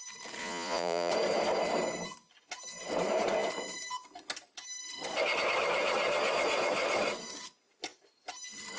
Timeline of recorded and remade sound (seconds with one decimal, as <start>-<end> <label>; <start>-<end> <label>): 0.0-0.4 recorded; 0.4-1.1 remade; 1.1-8.8 recorded